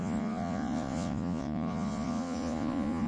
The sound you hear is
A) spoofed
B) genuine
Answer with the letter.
A